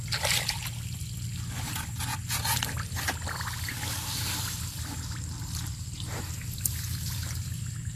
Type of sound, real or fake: real